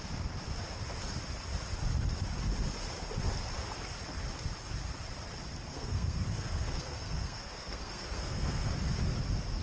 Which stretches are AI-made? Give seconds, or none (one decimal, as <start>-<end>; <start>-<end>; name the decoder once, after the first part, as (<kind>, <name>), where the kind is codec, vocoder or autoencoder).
5.7-8.7 (codec, SNAC)